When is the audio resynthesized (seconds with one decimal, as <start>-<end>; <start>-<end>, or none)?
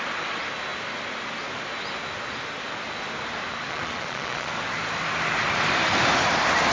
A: 3.7-4.5